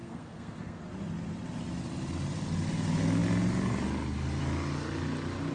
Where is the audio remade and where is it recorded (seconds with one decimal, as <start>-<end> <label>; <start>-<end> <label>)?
0.0-0.8 remade; 0.8-5.5 recorded